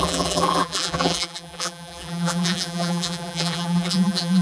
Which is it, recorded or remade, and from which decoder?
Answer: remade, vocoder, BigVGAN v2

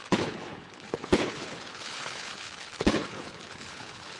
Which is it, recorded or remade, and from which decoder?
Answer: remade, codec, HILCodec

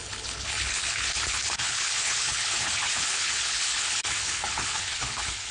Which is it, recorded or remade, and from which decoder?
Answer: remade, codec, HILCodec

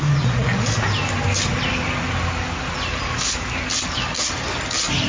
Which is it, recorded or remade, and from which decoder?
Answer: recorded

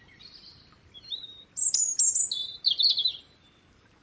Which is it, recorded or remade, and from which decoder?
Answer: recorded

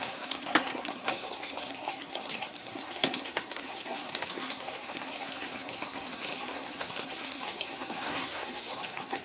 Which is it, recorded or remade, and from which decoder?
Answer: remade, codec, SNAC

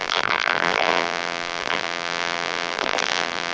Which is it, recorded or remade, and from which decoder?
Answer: remade, vocoder, BigVGAN v2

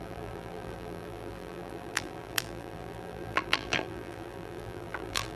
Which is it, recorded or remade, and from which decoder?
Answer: remade, vocoder, BigVGAN v2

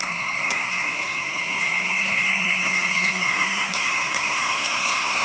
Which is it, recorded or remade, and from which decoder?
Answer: remade, codec, SNAC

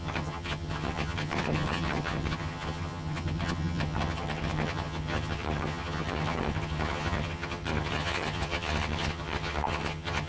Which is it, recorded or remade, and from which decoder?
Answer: remade, vocoder, HiFi-GAN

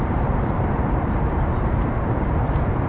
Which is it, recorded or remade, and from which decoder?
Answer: remade, vocoder, BigVGAN v2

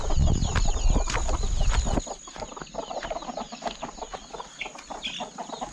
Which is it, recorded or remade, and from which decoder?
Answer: recorded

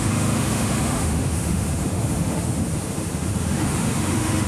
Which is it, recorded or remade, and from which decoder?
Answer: remade, autoencoder, DAC-VAE